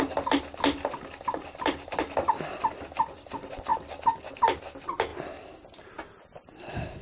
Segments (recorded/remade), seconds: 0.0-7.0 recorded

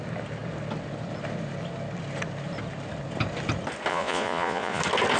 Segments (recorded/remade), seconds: 0.0-3.9 recorded; 3.9-4.8 remade; 4.8-5.2 recorded

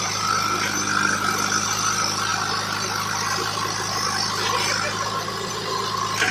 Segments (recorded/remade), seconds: 0.0-6.3 recorded

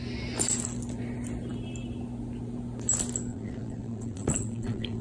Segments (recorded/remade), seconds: 0.0-3.3 recorded; 3.3-5.0 remade

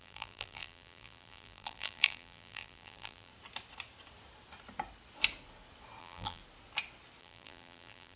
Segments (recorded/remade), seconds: 0.0-3.3 remade; 3.3-6.0 recorded; 6.0-6.4 remade; 6.4-7.2 recorded; 7.2-8.2 remade

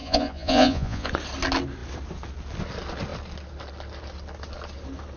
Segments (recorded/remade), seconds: 0.0-1.1 remade; 1.1-5.2 recorded